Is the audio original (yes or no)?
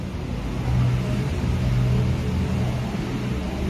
yes